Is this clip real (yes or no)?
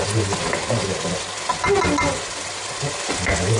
yes